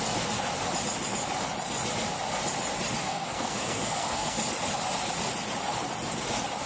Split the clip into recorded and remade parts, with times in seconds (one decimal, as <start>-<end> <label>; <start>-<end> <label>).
0.0-3.0 recorded; 3.0-4.4 remade; 4.4-6.7 recorded